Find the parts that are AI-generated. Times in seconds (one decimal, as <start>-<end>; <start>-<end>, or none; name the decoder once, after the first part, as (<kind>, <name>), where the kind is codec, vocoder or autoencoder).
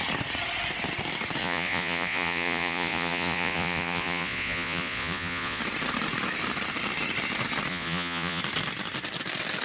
1.4-5.6 (vocoder, Vocos); 7.7-8.4